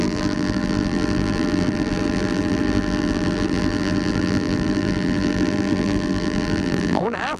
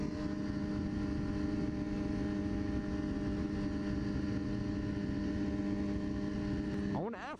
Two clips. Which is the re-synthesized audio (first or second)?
first